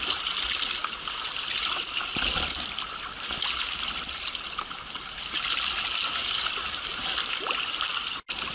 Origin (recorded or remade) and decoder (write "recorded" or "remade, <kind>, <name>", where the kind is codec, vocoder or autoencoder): recorded